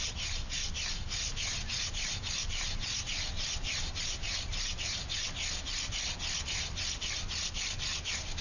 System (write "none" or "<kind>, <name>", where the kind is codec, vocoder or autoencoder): none